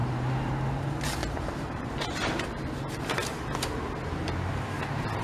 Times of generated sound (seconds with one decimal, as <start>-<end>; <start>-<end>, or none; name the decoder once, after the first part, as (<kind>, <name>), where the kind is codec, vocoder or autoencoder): 0.0-0.5 (vocoder, BigVGAN v2); 1.2-2.6